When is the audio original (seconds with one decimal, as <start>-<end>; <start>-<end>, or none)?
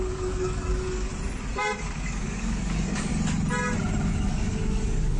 1.1-1.8; 3.1-4.1